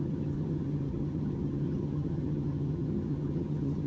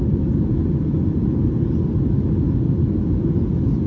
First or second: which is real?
second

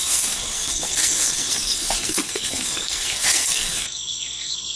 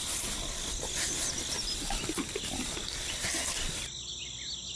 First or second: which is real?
second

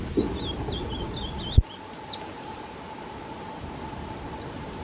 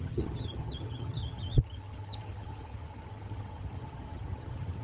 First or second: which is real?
first